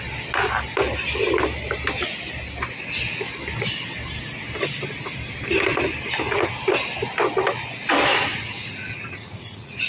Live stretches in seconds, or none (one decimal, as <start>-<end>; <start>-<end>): 0.0-8.1